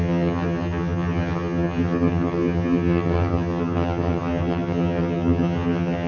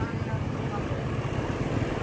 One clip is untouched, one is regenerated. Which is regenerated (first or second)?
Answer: first